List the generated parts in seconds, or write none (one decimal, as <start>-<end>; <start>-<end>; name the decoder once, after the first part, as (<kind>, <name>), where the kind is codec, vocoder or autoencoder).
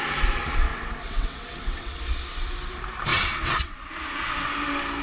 0.7-2.0 (vocoder, WaveNeXt); 3.1-3.9